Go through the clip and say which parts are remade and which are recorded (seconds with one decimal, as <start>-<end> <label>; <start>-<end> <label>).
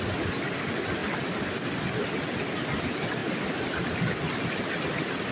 0.0-5.3 recorded